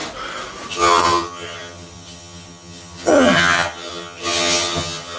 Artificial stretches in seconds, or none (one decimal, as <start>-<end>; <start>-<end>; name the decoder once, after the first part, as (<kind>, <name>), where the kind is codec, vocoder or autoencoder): 0.7-5.2 (vocoder, HiFi-GAN)